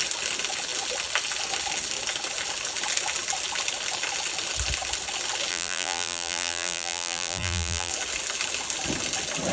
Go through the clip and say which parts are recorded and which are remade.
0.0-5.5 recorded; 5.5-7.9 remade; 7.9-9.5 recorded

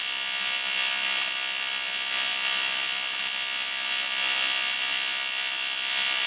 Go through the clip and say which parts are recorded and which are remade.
0.0-6.3 recorded

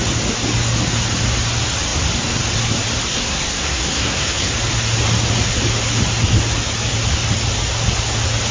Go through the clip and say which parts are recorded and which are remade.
0.0-3.1 recorded; 3.1-4.5 remade; 4.5-8.5 recorded

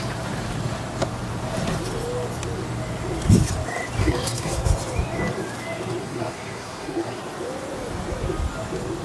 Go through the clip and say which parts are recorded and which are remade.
0.0-4.0 recorded; 4.0-4.6 remade; 4.6-6.0 recorded; 6.0-7.2 remade; 7.2-9.0 recorded

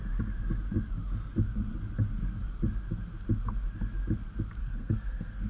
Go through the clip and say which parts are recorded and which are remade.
0.0-4.6 recorded; 4.6-5.5 remade

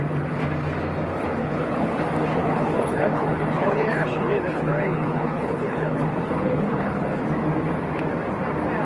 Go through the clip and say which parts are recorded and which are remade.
0.0-1.4 recorded; 1.4-2.0 remade; 2.0-2.4 recorded; 2.4-7.2 remade; 7.2-8.8 recorded